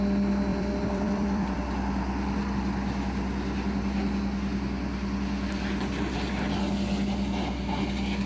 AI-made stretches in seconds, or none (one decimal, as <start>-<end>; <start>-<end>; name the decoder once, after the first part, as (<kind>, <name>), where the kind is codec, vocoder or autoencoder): 0.5-1.6 (vocoder, BigVGAN v2)